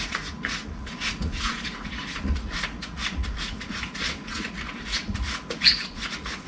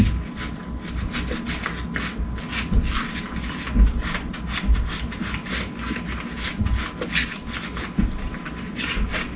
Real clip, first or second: second